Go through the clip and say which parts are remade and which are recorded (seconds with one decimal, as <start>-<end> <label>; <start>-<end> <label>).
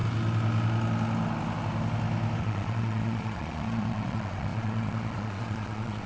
0.0-2.4 recorded; 2.4-6.1 remade